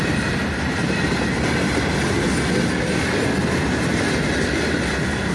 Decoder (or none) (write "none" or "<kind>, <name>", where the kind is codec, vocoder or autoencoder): none